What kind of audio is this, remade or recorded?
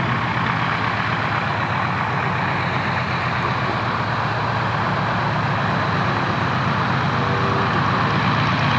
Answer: recorded